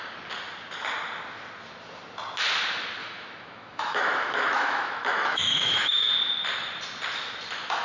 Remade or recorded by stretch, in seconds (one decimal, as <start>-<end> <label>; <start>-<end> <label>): 0.0-3.0 recorded; 3.0-6.1 remade; 6.1-7.8 recorded